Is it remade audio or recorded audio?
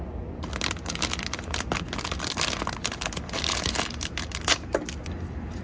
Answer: recorded